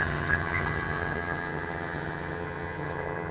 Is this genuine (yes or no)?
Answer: no